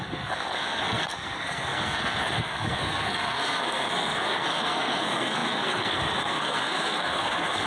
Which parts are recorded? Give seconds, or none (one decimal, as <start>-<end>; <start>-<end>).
none